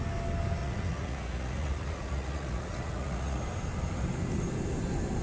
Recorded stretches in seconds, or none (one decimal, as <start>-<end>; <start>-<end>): 0.0-0.6; 3.4-5.2